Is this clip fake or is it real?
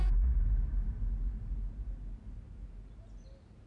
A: real